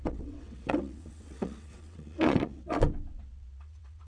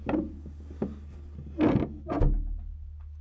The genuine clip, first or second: second